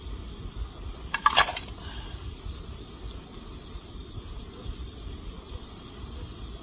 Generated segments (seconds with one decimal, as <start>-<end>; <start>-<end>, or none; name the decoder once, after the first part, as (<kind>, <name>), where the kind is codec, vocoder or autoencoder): none